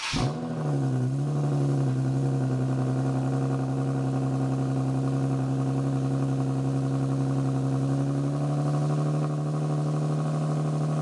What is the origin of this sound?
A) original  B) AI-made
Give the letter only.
A